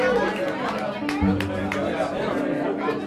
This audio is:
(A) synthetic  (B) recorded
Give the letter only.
B